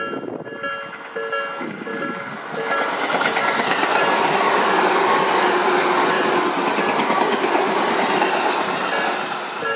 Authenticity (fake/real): real